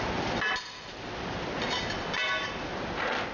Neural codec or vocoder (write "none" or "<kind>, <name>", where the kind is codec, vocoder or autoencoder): none